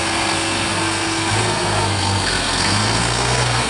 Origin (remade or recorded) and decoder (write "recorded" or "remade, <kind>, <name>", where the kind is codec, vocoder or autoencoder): remade, codec, SNAC